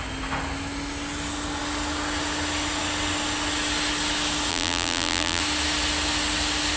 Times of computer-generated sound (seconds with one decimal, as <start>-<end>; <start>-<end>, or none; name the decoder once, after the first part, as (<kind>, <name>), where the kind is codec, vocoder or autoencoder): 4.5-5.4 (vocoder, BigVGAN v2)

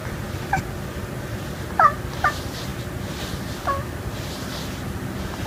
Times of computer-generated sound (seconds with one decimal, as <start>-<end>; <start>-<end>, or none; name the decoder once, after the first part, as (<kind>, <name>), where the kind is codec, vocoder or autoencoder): 0.0-0.6 (vocoder, BigVGAN v2)

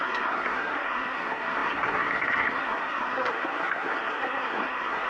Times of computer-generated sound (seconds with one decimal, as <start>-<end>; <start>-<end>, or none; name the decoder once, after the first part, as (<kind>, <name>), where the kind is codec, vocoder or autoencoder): 0.0-5.1 (codec, SNAC)